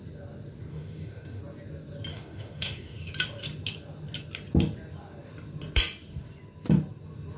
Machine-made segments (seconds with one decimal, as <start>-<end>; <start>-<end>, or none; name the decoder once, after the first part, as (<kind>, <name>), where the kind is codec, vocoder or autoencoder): 0.7-1.4 (autoencoder, DAC-VAE); 2.1-3.1